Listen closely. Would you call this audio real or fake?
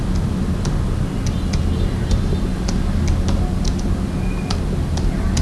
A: real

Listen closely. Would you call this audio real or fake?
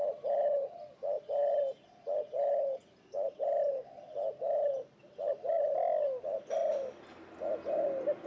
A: real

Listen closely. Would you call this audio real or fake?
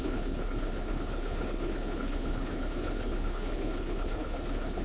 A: fake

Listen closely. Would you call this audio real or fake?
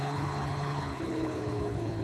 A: fake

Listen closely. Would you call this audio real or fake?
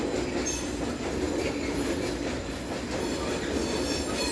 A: real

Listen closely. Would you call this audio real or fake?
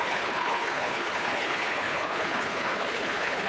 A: fake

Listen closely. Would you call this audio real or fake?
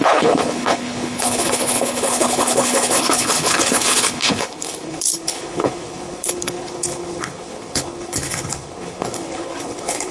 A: fake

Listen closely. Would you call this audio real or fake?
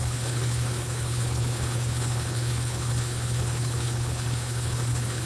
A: fake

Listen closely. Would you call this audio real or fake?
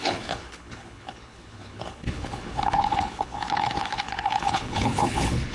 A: fake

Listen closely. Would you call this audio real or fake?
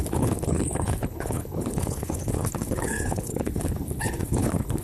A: fake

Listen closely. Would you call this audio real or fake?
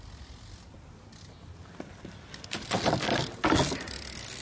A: real